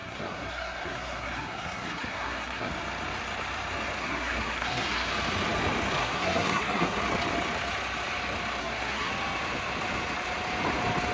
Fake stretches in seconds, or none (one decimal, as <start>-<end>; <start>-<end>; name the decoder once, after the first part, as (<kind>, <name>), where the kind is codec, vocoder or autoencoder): 0.0-2.7 (codec, SNAC); 4.0-5.1; 6.0-7.0; 8.6-9.1